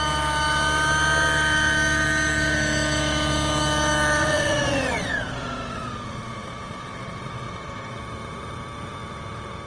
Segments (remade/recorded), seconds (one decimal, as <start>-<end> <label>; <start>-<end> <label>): 0.0-4.2 recorded; 4.2-8.0 remade; 8.0-9.7 recorded